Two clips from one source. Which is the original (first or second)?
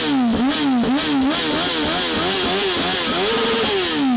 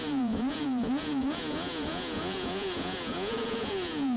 first